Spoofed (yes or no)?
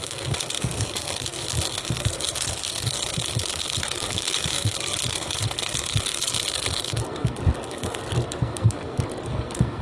yes